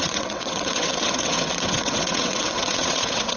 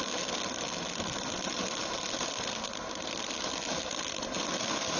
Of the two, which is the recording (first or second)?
second